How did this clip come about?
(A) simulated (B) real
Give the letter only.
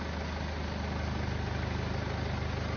B